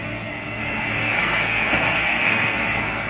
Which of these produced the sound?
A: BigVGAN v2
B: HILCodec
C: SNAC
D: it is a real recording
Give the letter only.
C